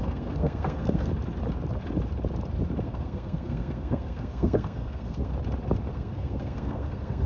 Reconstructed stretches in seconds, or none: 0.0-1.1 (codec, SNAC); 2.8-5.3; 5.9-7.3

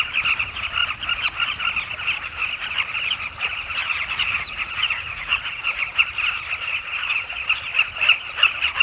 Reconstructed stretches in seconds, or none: 3.8-5.6 (vocoder, Vocos)

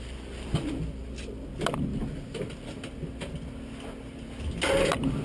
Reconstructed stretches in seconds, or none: none

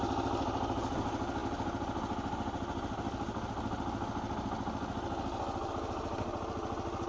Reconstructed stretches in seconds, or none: none

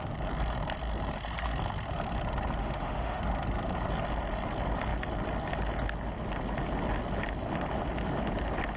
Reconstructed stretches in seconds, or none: 2.6-3.2 (autoencoder, DAC-VAE)

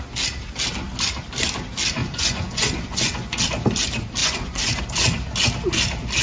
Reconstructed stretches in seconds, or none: 2.0-3.4 (vocoder, Vocos); 4.2-4.8

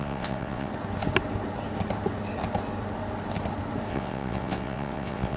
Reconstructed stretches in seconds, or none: 0.0-0.7 (vocoder, WaveNeXt); 3.9-5.4